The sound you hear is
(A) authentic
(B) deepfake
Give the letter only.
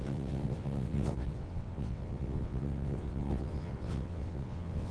B